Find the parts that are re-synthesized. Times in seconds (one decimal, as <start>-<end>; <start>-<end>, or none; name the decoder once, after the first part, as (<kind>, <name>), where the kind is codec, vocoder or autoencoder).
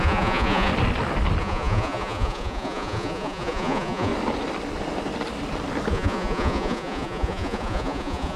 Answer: 0.0-0.7 (vocoder, Vocos); 1.4-4.1; 5.9-8.4